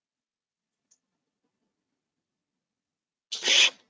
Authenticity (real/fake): real